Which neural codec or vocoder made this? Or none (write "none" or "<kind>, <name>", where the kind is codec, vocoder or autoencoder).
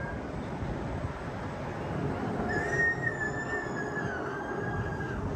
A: none